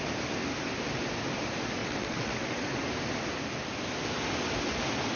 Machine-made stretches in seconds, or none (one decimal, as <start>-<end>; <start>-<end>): 1.8-2.7